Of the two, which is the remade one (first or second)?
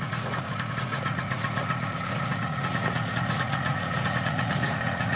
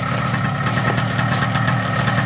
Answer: first